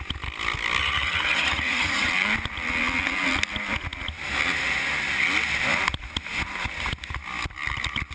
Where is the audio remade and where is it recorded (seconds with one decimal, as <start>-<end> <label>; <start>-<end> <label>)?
0.0-0.8 recorded; 0.8-2.1 remade; 2.1-8.1 recorded